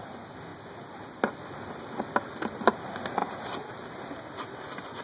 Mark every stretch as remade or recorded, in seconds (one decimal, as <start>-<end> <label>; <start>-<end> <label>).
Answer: 0.0-3.2 recorded; 3.2-3.7 remade; 3.7-5.0 recorded